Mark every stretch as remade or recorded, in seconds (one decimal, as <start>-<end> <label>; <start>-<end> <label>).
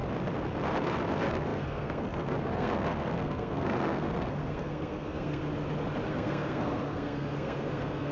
0.0-0.8 recorded; 0.8-5.4 remade; 5.4-6.1 recorded; 6.1-8.1 remade